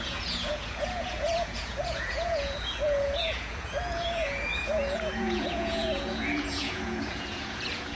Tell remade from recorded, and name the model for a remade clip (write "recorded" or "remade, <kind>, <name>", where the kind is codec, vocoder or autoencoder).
remade, vocoder, Vocos